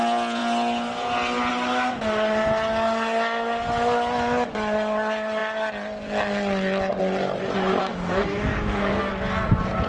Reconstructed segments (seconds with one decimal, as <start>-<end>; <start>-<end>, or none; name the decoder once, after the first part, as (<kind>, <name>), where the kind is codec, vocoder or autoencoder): 7.8-9.1 (codec, DAC)